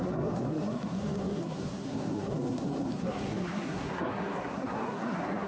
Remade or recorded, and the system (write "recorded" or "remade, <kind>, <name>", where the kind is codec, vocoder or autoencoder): remade, codec, SNAC